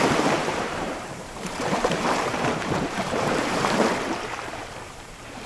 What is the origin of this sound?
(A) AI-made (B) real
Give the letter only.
A